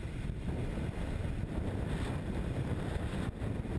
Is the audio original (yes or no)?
no